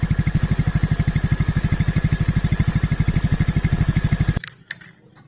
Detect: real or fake real